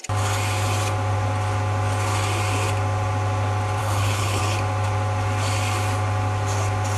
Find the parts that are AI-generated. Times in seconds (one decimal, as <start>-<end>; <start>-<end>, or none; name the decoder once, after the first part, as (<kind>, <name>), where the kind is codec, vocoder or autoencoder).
3.8-4.4 (codec, HILCodec)